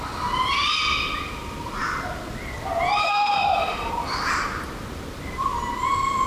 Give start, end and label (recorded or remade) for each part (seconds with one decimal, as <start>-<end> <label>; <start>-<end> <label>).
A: 0.0-3.0 recorded; 3.0-3.9 remade; 3.9-6.3 recorded